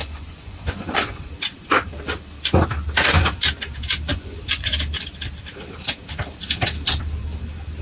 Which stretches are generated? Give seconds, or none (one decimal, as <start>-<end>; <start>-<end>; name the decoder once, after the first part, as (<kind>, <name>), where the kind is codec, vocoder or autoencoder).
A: 0.0-1.3 (vocoder, Vocos); 4.1-4.7